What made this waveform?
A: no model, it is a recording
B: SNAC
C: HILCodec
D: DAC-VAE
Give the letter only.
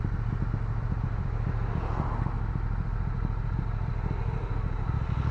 A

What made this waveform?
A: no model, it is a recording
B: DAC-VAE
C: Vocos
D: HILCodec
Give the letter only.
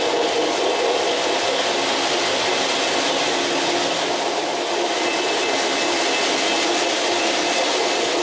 A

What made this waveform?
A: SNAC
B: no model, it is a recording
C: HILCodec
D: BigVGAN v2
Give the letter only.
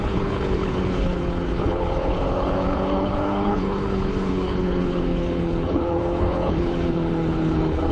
C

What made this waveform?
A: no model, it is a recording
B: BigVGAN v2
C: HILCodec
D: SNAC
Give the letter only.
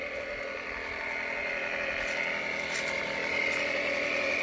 A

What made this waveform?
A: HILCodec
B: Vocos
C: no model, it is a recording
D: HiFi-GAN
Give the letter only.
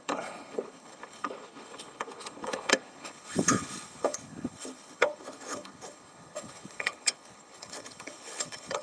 A